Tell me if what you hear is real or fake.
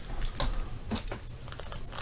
real